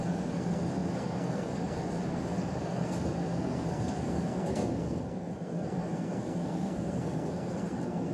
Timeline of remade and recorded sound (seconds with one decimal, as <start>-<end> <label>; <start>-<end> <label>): 0.0-8.1 remade